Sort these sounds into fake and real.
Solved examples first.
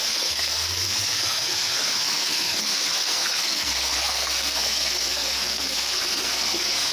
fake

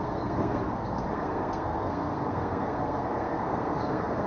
fake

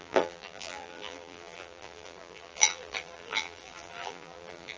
fake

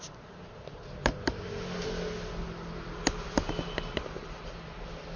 real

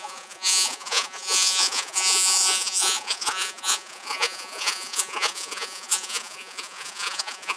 fake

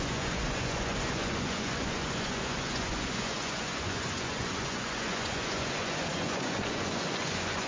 fake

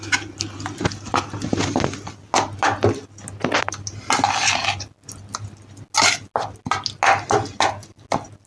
real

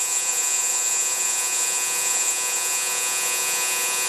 fake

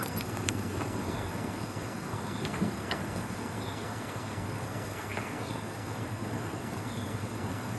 fake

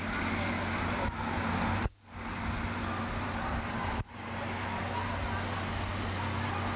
real